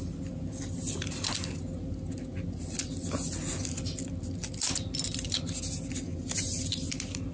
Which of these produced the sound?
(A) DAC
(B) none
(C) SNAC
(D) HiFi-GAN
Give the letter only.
B